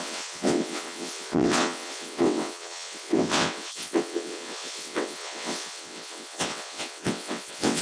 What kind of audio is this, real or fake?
fake